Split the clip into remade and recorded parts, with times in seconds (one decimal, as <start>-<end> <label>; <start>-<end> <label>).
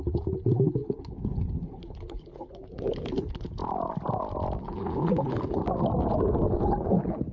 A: 0.0-3.6 remade; 3.6-4.6 recorded; 4.6-5.6 remade; 5.6-6.8 recorded; 6.8-7.3 remade